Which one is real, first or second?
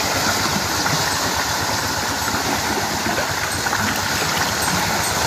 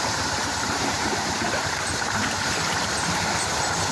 first